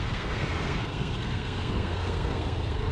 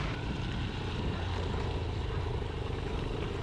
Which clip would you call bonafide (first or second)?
second